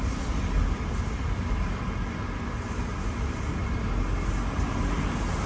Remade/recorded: recorded